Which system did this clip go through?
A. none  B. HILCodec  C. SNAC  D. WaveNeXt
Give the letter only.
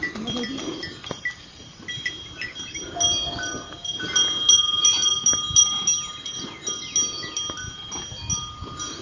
A